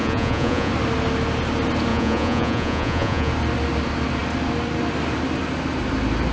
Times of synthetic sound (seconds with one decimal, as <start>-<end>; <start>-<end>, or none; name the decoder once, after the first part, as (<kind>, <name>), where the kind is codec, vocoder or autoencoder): 0.0-0.7 (vocoder, Vocos); 1.9-3.3